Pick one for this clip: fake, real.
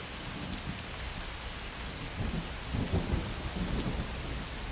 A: real